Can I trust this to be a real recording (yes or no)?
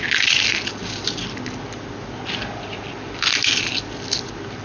yes